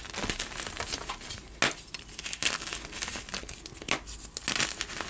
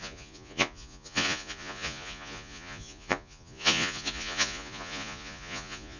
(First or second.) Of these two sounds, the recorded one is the first